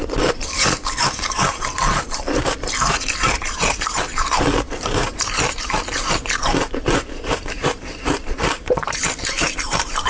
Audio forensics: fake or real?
fake